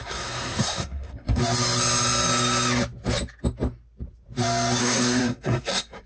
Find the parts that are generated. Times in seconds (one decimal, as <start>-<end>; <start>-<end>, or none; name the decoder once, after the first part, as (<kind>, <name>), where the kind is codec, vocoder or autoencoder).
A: 0.0-1.4 (codec, SNAC); 4.8-6.1